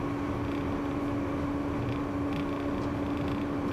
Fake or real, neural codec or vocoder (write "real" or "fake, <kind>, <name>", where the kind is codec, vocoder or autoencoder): real